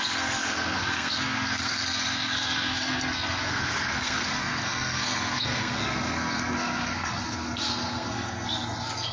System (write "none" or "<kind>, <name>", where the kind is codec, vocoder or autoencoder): codec, SNAC